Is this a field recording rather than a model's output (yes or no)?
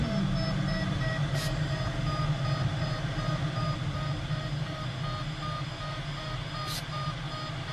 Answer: yes